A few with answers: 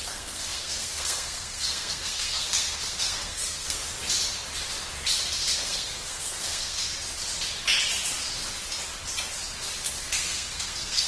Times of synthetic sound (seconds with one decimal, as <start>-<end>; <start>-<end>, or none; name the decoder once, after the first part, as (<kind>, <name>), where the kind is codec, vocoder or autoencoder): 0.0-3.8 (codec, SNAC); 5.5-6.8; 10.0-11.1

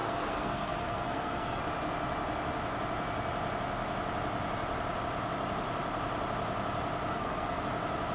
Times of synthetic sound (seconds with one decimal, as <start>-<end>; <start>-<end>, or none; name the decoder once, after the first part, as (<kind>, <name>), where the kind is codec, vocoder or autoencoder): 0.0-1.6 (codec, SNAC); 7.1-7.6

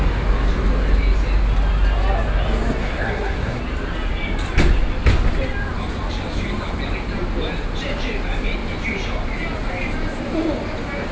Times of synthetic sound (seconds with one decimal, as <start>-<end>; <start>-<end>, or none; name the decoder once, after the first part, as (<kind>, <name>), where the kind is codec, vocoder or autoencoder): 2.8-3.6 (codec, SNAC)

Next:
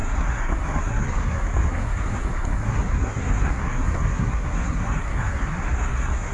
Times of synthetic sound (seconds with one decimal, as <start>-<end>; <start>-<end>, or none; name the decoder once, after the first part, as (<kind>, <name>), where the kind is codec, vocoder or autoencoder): 0.0-6.3 (codec, SNAC)